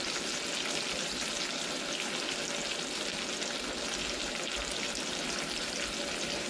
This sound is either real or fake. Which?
real